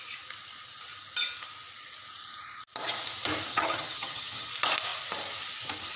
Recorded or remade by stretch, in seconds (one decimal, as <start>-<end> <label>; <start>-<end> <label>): 0.0-3.5 recorded; 3.5-4.5 remade; 4.5-6.0 recorded